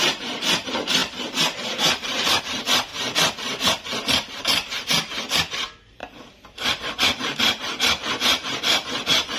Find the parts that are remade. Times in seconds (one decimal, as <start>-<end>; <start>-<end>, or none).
0.0-2.9; 4.4-9.4